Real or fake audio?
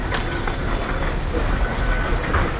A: real